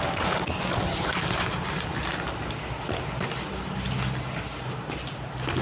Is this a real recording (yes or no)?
yes